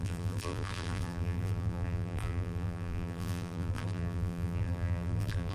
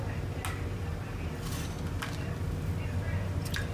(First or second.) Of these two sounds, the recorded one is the second